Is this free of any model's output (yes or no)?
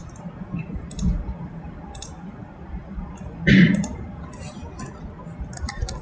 yes